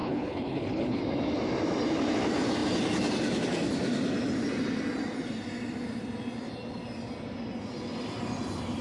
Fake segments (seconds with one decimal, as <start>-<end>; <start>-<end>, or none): 0.0-1.0